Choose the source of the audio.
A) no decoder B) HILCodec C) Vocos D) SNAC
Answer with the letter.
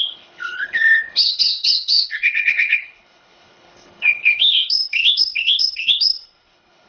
B